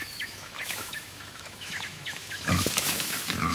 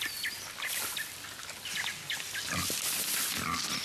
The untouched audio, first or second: second